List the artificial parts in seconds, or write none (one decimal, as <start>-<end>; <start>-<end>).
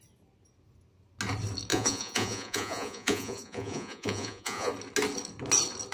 1.7-4.7